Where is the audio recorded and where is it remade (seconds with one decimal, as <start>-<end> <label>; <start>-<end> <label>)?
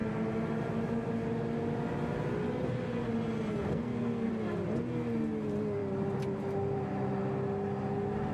0.0-3.5 recorded; 3.5-4.3 remade; 4.3-8.3 recorded